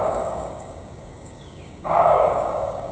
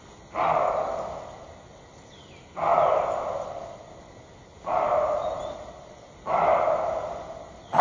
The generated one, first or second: first